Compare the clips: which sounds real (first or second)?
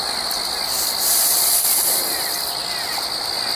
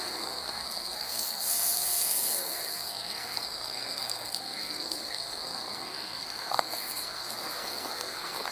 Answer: first